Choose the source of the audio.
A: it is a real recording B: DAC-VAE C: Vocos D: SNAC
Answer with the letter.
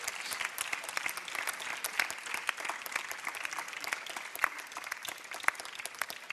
A